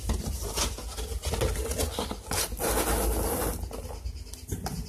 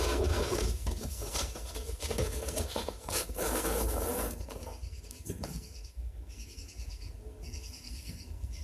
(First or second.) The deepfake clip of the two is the second